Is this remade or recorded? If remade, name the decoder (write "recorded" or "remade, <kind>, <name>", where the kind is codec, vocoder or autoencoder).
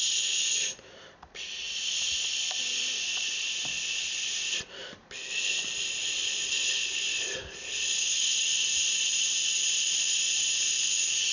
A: recorded